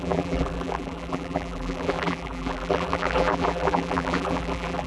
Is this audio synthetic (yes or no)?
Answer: yes